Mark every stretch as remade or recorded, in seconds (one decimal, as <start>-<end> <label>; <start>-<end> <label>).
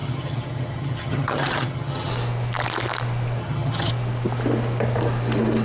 0.0-2.1 remade; 2.1-3.4 recorded; 3.4-3.9 remade; 3.9-5.6 recorded